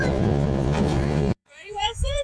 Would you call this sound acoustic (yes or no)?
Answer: no